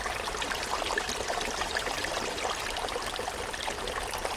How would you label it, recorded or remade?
remade